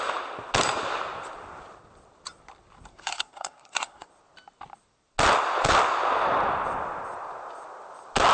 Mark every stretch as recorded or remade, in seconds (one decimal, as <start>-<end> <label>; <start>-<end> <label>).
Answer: 0.0-2.9 recorded; 2.9-4.1 remade; 4.1-8.3 recorded